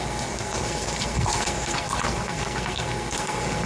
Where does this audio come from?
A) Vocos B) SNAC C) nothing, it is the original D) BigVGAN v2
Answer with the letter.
B